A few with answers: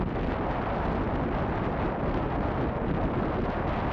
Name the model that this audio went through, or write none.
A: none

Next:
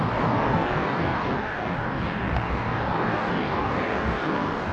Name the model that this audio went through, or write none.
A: codec, DAC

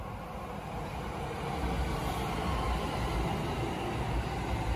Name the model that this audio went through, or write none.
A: none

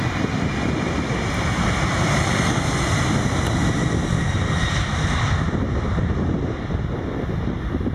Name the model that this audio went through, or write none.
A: none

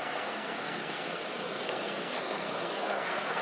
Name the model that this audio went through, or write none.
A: codec, SNAC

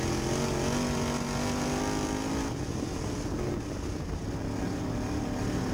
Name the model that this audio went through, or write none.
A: none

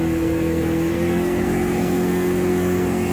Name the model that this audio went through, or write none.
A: codec, SNAC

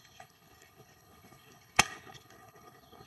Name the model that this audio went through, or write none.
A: codec, HILCodec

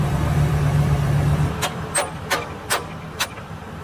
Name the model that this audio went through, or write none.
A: vocoder, BigVGAN v2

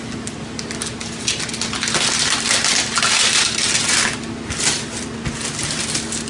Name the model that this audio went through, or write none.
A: none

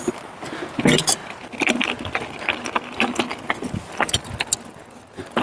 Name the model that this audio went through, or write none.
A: none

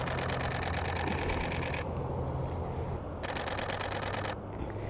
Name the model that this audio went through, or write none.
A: none